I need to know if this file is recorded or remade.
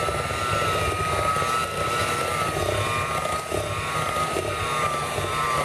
recorded